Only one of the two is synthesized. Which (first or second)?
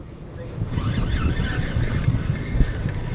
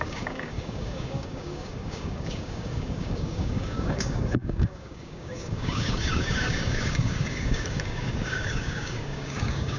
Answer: second